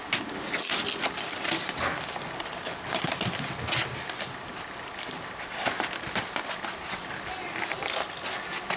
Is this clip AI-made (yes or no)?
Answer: no